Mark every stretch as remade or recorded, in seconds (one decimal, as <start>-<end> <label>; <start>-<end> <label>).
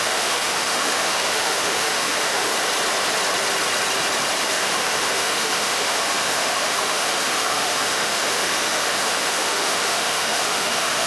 0.0-2.5 remade; 2.5-4.5 recorded; 4.5-11.1 remade